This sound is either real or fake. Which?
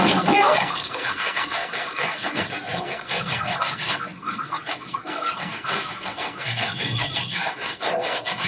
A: fake